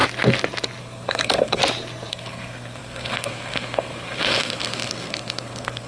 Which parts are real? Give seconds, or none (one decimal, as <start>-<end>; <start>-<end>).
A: 0.0-0.8; 1.6-2.1